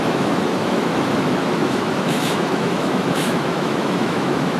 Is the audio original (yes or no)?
no